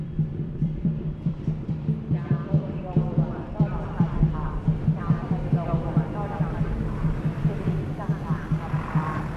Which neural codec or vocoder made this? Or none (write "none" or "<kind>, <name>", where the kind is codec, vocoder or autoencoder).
vocoder, BigVGAN v2